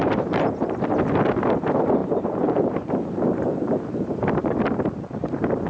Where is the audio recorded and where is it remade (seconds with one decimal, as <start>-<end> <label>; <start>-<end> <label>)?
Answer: 0.0-0.9 remade; 0.9-2.0 recorded; 2.0-5.7 remade